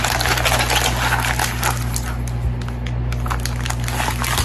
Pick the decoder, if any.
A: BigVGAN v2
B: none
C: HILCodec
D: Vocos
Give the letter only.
B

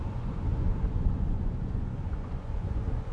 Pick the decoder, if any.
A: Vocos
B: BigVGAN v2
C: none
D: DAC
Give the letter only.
A